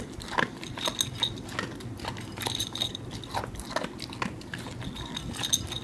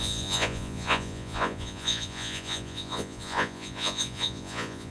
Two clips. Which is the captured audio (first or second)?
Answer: first